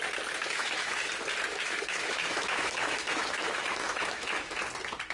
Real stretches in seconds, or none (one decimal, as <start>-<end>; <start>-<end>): 0.0-0.4; 1.1-1.5; 4.6-5.1